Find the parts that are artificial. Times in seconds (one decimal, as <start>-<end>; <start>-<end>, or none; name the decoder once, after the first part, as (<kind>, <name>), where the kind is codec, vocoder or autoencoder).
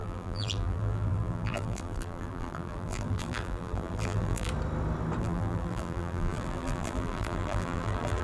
0.0-4.5 (vocoder, BigVGAN v2); 5.2-8.2